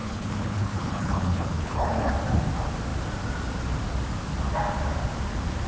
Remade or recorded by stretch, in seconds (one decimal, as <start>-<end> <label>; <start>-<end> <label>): 0.0-2.1 remade; 2.1-5.7 recorded